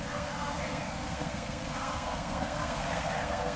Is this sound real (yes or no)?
no